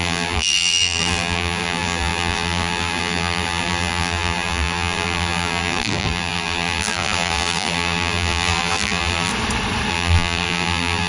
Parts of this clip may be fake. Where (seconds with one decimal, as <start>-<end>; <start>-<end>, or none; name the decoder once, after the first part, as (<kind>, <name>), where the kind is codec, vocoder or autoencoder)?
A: 0.0-9.3 (vocoder, BigVGAN v2); 9.9-11.1